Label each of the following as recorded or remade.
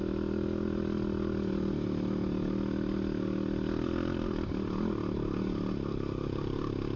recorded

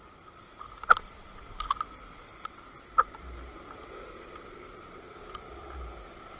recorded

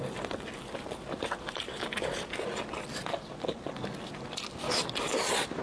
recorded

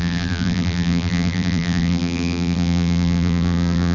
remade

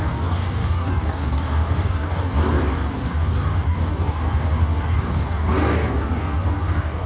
remade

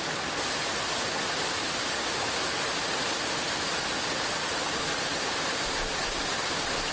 recorded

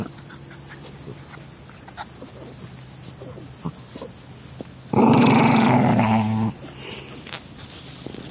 recorded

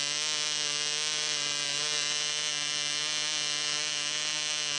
recorded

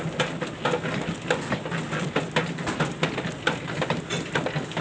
recorded